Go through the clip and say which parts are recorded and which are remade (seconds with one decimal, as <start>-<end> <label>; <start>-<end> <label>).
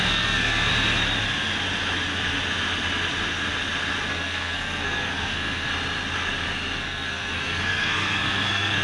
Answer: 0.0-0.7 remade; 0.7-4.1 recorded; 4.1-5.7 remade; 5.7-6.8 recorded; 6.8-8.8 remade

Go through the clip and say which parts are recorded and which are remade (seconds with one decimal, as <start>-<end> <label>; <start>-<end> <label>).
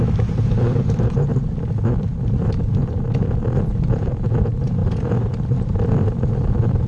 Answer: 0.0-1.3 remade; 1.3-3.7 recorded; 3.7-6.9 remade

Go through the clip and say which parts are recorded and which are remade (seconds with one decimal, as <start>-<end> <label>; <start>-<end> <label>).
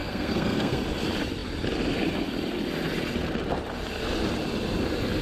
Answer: 0.0-0.8 remade; 0.8-5.2 recorded